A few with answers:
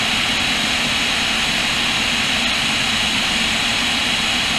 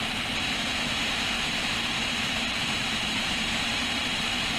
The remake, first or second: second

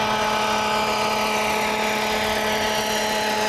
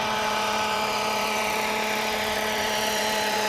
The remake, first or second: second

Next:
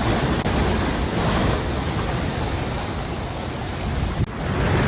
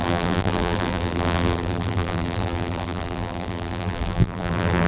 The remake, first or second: second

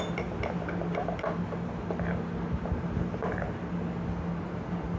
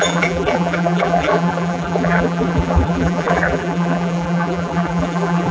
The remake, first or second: second